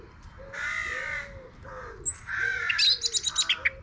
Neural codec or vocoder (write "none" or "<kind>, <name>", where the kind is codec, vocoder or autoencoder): none